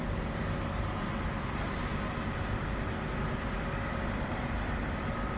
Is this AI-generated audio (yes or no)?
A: no